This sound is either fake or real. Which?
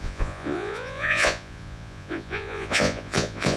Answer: fake